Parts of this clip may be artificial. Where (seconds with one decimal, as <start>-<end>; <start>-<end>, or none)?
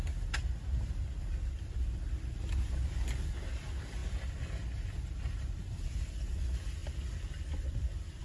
6.8-8.2